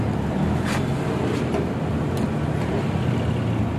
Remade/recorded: recorded